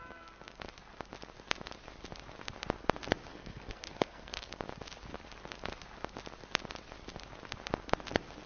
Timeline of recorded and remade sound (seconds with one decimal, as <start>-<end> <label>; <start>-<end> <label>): 0.0-3.3 recorded; 3.3-4.5 remade; 4.5-8.5 recorded